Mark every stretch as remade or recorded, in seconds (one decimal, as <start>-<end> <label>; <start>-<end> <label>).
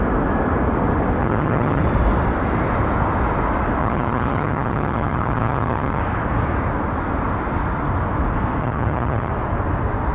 0.0-1.2 recorded; 1.2-1.8 remade; 1.8-3.8 recorded; 3.8-6.0 remade; 6.0-8.6 recorded; 8.6-9.3 remade; 9.3-10.1 recorded